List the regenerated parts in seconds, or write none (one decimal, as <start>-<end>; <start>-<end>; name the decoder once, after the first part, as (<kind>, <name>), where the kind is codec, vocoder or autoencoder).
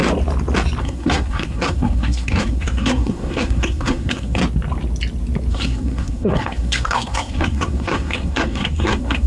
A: 0.8-4.4 (codec, SNAC); 5.5-9.3